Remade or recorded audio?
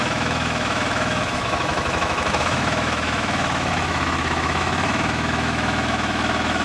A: remade